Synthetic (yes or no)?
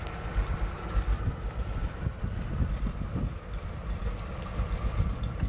no